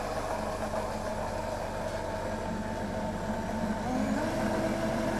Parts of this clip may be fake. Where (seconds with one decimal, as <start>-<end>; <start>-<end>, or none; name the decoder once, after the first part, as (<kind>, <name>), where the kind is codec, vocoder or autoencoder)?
none